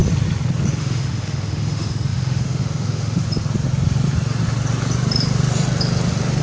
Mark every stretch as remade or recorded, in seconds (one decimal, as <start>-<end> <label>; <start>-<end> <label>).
0.0-0.8 recorded; 0.8-3.2 remade; 3.2-6.4 recorded